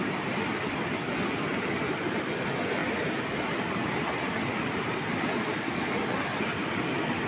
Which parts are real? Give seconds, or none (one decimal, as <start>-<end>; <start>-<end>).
2.8-7.3